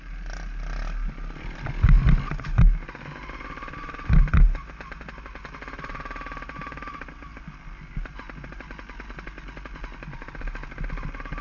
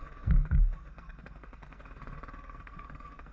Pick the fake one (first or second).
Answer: second